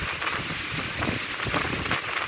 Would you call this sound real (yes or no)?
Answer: yes